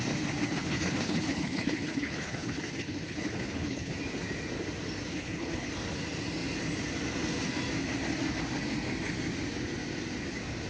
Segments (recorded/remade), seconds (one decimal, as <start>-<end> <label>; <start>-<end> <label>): 0.0-0.6 recorded; 0.6-3.9 remade; 3.9-5.1 recorded; 5.1-5.7 remade; 5.7-10.7 recorded